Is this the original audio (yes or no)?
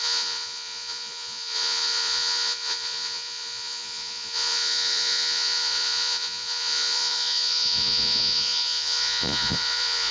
no